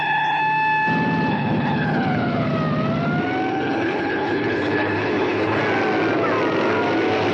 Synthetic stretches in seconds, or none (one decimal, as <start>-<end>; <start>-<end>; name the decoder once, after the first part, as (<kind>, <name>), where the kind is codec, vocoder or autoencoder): 0.0-0.4 (codec, HILCodec); 1.3-2.5; 3.5-5.6